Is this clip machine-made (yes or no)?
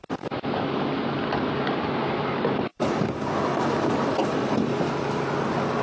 no